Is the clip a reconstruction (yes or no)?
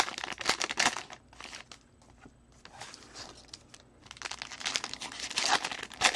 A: no